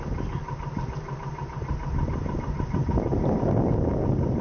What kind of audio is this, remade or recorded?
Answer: recorded